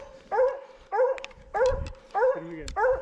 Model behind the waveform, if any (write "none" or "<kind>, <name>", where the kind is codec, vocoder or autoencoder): none